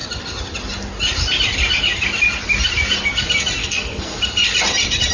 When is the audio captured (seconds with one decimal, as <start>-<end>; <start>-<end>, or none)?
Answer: 0.0-3.6; 4.2-5.1